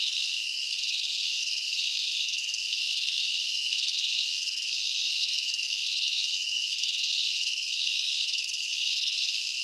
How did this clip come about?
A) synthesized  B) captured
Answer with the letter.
A